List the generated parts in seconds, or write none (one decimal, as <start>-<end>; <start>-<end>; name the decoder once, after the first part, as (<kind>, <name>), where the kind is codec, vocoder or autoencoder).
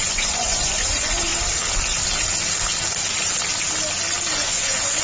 0.0-1.3 (vocoder, Vocos); 4.3-5.0